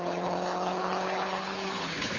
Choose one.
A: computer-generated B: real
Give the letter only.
A